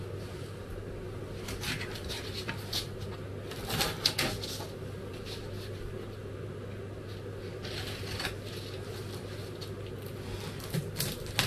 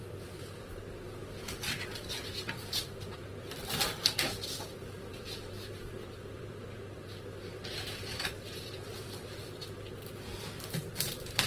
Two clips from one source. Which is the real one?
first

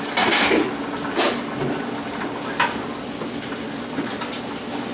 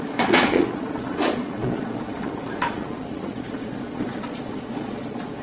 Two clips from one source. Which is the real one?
first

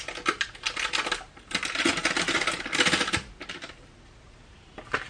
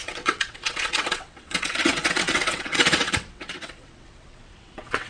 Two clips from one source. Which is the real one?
first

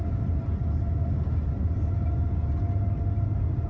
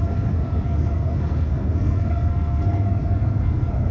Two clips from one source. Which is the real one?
first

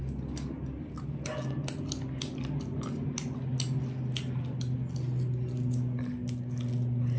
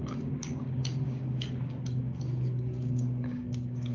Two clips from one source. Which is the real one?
first